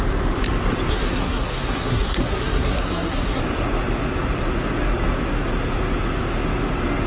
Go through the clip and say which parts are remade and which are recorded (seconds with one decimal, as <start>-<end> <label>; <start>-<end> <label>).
0.0-0.9 recorded; 0.9-3.4 remade; 3.4-7.1 recorded